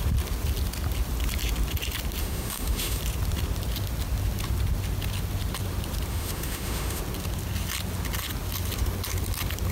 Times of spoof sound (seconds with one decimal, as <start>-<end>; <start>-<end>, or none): 2.2-3.0; 6.1-7.0